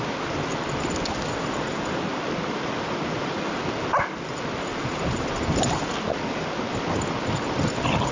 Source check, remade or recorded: recorded